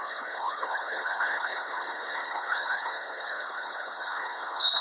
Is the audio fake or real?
fake